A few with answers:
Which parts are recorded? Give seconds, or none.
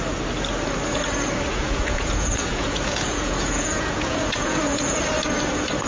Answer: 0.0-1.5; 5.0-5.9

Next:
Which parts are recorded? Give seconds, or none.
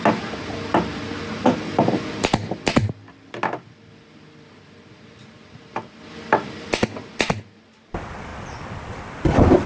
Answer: 0.0-9.7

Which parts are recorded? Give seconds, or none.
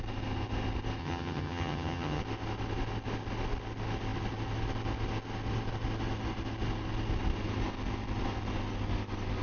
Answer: 0.0-1.0; 2.2-9.4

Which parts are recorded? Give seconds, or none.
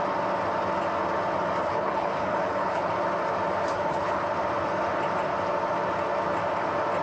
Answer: 0.0-1.6; 2.9-3.7; 4.2-7.0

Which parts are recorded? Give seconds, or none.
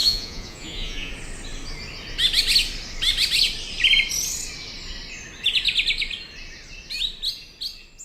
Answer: 1.1-8.0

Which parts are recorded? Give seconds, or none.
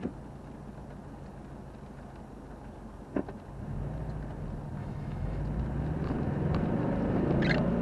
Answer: 0.0-4.8; 5.4-7.8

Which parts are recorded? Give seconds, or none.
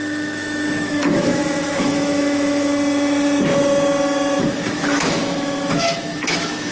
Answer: 2.7-4.4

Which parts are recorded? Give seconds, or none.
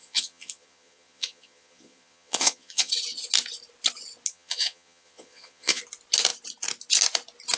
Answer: 2.9-4.3; 5.8-7.6